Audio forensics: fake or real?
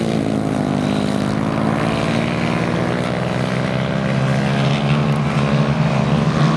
real